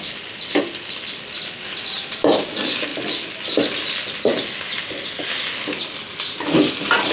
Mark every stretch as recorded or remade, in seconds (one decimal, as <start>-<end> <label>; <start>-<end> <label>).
0.0-7.1 recorded